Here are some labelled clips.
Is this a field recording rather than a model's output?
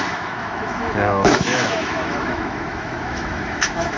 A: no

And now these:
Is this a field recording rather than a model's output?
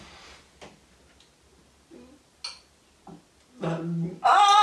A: yes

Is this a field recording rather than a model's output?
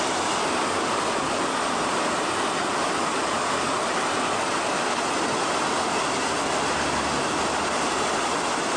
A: yes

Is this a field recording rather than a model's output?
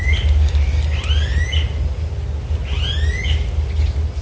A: yes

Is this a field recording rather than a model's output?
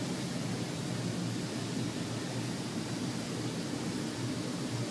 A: yes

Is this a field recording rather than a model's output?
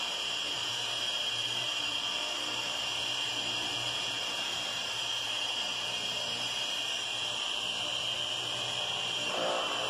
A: no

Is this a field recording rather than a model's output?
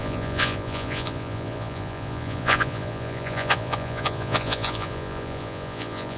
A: no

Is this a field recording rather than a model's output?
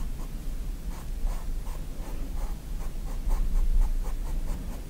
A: no